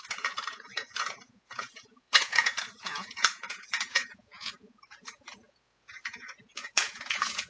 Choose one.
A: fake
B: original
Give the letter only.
A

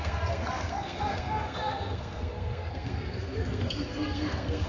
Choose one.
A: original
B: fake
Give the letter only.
B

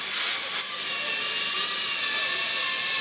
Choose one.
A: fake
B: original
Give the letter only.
B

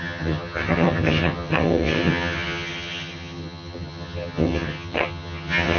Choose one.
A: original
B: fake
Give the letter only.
B